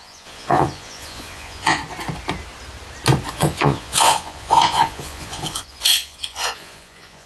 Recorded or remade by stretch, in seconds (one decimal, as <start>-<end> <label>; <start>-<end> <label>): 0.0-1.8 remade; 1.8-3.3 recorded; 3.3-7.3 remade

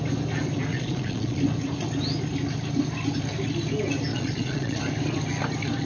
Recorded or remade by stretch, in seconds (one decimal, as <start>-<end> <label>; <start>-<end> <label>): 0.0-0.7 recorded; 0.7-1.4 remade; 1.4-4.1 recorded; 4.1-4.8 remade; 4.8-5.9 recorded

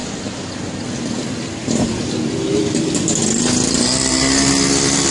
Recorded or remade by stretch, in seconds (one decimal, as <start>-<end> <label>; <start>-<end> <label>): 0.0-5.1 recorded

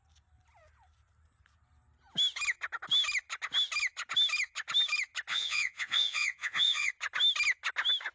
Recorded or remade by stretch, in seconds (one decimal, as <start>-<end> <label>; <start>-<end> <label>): 0.0-5.3 recorded; 5.3-6.9 remade; 6.9-8.1 recorded